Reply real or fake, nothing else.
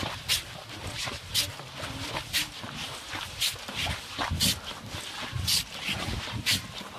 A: real